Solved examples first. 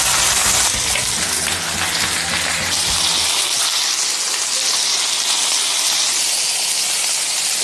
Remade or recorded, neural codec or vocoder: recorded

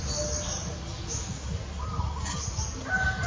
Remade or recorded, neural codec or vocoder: recorded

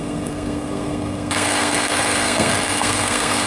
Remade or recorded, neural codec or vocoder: remade, codec, SNAC